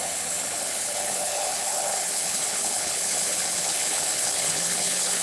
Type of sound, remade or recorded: remade